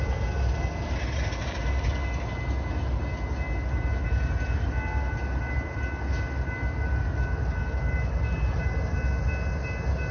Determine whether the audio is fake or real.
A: real